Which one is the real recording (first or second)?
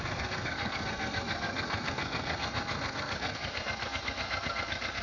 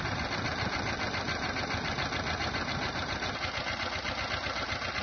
second